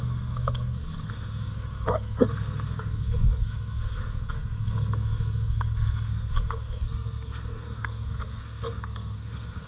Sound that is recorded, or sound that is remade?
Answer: remade